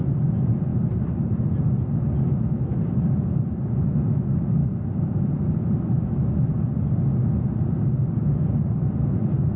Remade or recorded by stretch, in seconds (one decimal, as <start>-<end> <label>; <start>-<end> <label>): 0.0-2.7 recorded; 2.7-3.6 remade; 3.6-9.6 recorded